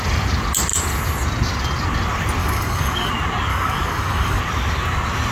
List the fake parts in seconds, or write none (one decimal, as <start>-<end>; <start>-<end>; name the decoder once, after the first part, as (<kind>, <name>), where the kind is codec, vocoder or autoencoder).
2.4-3.1 (codec, DAC); 3.5-4.4